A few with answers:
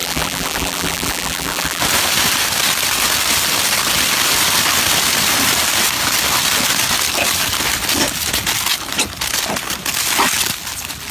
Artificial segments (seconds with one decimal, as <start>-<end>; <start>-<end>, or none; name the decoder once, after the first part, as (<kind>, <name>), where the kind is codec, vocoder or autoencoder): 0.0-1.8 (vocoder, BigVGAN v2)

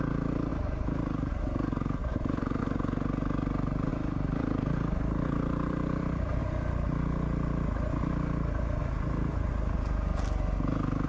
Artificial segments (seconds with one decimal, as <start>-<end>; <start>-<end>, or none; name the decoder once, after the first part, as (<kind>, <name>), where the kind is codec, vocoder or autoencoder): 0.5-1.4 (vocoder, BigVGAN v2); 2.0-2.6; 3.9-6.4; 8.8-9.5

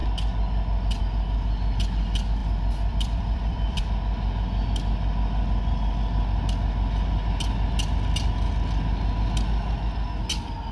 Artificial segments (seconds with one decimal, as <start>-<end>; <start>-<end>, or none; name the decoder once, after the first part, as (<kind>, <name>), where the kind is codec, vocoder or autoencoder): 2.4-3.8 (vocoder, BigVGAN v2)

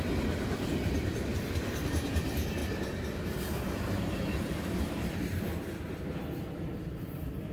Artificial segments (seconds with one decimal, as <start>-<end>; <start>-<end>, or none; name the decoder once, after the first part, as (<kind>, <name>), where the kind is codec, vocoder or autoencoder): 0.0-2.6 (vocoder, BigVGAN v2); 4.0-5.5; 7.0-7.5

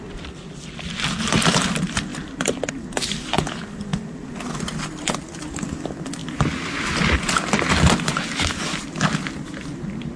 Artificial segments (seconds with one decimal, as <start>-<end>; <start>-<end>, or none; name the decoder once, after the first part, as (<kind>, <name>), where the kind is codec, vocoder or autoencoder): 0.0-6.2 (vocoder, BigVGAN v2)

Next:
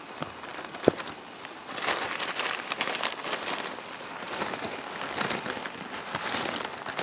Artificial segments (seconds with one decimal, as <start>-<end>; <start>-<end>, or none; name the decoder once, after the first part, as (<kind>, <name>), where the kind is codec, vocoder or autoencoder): none